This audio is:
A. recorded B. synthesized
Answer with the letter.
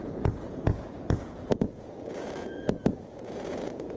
B